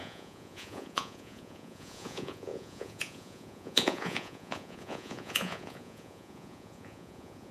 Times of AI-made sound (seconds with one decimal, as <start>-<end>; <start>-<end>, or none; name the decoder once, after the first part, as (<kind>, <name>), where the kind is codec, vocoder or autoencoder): 0.0-7.5 (vocoder, Vocos)